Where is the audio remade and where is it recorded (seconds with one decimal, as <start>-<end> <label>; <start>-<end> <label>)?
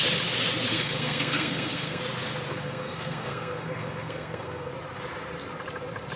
0.0-0.7 recorded; 0.7-2.0 remade; 2.0-2.5 recorded; 2.5-4.7 remade; 4.7-6.2 recorded